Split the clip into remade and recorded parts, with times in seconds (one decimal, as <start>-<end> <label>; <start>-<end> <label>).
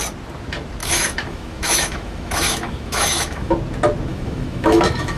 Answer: 0.0-0.8 recorded; 0.8-3.5 remade; 3.5-4.1 recorded; 4.1-5.2 remade